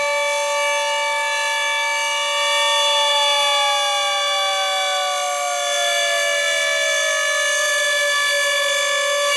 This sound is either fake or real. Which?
real